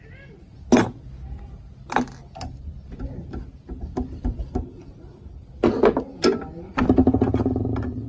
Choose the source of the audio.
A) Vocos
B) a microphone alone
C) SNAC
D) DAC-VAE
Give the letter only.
B